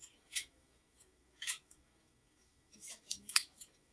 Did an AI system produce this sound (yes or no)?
yes